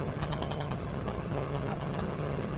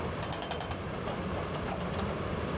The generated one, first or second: first